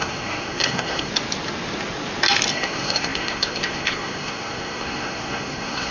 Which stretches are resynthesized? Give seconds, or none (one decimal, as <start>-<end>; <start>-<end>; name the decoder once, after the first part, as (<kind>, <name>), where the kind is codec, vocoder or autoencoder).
0.0-1.1 (codec, SNAC); 2.5-5.9